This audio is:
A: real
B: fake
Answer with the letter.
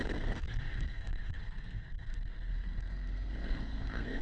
B